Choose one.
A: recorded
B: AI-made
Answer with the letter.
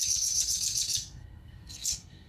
B